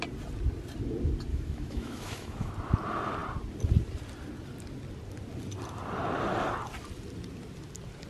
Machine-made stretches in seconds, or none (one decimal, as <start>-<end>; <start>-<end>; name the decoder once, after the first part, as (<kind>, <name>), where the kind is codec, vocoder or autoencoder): 1.3-2.5 (autoencoder, DAC-VAE)